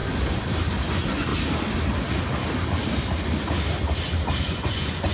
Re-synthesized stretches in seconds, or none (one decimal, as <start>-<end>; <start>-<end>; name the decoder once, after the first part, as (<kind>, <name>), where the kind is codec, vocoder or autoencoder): 0.9-1.3 (vocoder, Vocos); 4.4-5.1